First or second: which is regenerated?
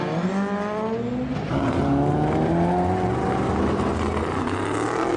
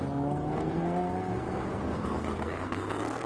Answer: second